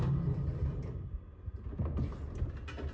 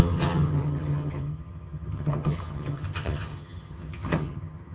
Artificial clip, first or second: second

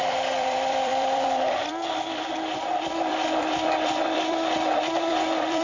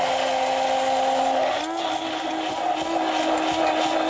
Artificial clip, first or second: first